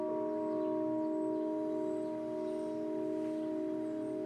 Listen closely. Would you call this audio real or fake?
real